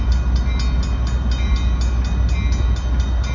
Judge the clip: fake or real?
real